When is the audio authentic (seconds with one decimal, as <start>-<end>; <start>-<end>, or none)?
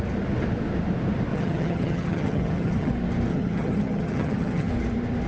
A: 0.0-1.3; 2.9-3.3; 4.7-5.3